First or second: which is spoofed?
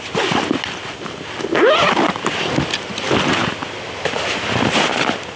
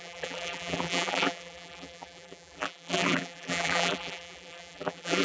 second